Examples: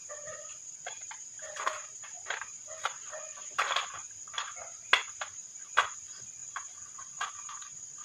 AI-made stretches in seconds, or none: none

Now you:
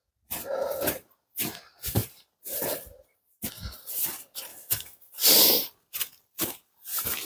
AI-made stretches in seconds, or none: 4.5-5.1 (autoencoder, DAC-VAE)

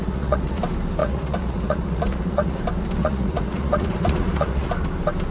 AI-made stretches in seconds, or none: 0.0-0.6 (vocoder, Vocos); 1.0-2.6; 3.0-4.7

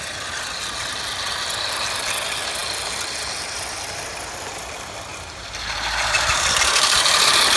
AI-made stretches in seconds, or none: 5.1-7.6 (vocoder, BigVGAN v2)

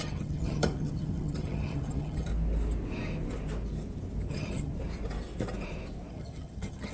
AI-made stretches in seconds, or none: 0.0-2.3 (vocoder, HiFi-GAN); 4.3-4.7; 6.1-6.9

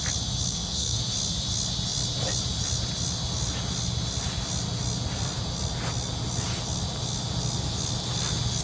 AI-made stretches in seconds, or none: 0.5-1.0 (codec, SNAC)

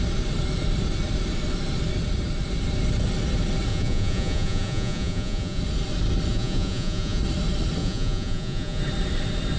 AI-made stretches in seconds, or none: 3.7-5.6 (vocoder, Vocos); 6.3-7.2; 7.8-8.8